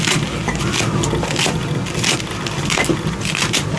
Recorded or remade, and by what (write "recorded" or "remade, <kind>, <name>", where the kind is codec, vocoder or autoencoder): recorded